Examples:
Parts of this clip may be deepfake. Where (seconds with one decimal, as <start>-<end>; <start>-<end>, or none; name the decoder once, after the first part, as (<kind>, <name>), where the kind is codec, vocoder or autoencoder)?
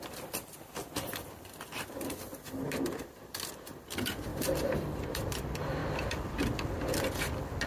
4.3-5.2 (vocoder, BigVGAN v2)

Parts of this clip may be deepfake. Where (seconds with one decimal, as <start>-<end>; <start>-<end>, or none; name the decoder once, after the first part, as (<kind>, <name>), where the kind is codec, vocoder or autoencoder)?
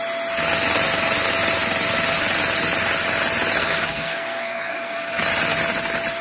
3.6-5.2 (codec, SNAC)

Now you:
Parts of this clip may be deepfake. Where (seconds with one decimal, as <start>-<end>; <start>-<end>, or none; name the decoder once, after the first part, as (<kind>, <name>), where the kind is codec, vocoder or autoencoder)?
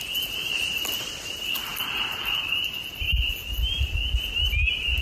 none